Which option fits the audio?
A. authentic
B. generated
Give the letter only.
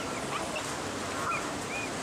A